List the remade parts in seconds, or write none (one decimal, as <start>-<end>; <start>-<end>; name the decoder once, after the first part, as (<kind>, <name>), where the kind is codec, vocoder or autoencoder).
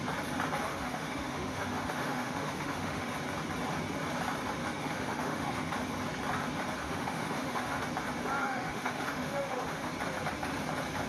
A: 0.7-3.1 (autoencoder, DAC-VAE); 4.6-5.7; 6.8-7.9; 8.4-9.9